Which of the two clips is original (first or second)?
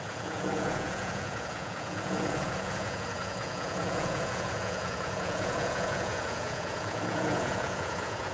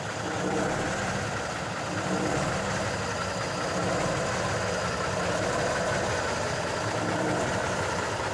second